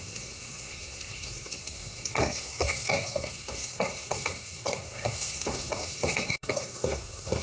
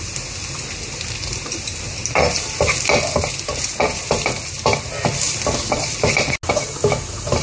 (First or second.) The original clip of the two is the second